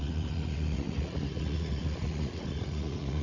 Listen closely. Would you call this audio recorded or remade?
remade